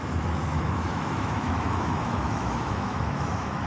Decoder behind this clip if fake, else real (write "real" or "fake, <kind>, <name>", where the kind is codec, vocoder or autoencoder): fake, autoencoder, DAC-VAE